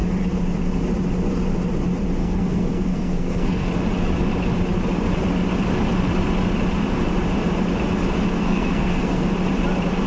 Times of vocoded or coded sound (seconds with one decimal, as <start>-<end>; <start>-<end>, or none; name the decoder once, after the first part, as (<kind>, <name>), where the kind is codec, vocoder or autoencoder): 2.2-3.7 (codec, SNAC); 8.4-9.3